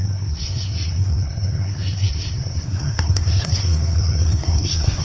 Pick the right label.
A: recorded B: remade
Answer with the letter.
B